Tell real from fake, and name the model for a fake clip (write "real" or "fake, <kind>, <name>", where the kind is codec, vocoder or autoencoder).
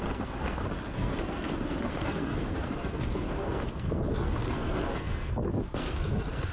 fake, codec, SNAC